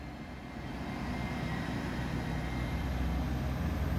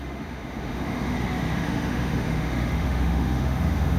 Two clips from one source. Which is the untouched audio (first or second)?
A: first